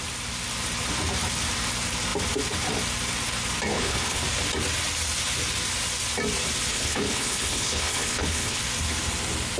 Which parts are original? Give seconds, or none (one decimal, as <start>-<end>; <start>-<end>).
0.0-3.7; 4.2-6.7; 8.6-9.6